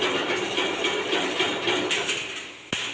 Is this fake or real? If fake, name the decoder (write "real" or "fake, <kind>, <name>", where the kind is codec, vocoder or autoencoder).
real